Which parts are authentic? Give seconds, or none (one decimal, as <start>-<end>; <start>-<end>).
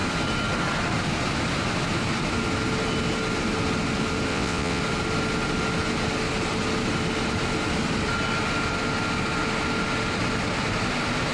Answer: 0.0-4.3; 4.8-11.3